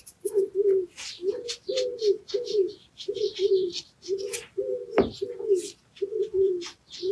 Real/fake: real